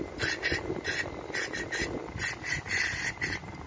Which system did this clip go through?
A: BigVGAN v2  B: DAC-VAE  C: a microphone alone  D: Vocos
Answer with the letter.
C